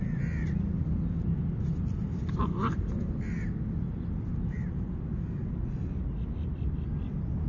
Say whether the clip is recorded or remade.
recorded